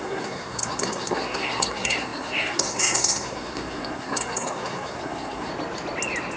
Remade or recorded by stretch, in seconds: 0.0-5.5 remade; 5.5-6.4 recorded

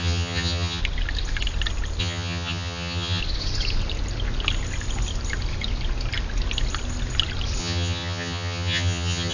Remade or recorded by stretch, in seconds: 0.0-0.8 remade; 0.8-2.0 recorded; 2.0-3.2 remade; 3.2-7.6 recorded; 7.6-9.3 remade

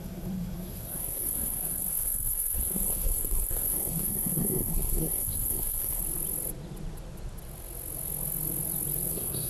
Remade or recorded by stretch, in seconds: 0.0-6.0 remade; 6.0-9.1 recorded; 9.1-9.5 remade

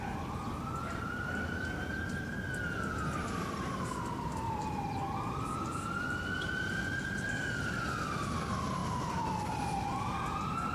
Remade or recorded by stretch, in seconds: 0.0-10.7 recorded

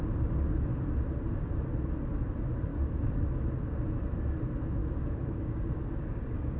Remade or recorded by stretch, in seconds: 0.0-2.7 recorded; 2.7-3.2 remade; 3.2-4.8 recorded; 4.8-6.6 remade

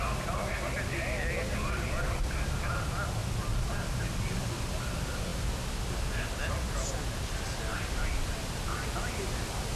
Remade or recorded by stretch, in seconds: 0.0-9.8 recorded